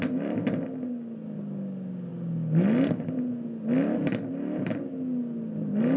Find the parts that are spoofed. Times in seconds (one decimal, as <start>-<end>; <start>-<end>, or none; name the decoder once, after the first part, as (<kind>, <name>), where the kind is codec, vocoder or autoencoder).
none

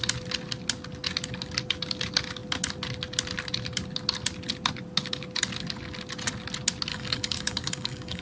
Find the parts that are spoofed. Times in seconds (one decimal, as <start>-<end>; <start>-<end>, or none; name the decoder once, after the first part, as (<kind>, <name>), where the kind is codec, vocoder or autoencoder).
6.9-8.2 (codec, DAC)

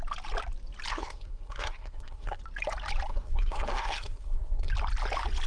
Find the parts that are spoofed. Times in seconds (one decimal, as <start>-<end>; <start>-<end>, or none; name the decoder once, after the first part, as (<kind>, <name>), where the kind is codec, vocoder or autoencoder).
0.9-2.4 (codec, SNAC); 3.1-4.7